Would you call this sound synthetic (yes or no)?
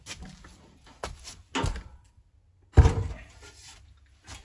no